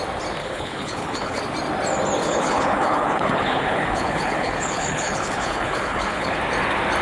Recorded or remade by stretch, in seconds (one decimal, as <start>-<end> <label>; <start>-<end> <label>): 0.0-0.4 recorded; 0.4-1.4 remade; 1.4-2.2 recorded; 2.2-6.4 remade; 6.4-7.0 recorded